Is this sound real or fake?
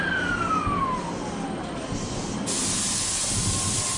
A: real